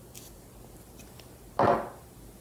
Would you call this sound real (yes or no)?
yes